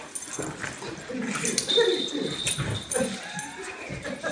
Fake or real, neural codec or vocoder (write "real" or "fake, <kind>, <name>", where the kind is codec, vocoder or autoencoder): real